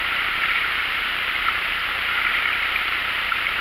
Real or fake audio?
real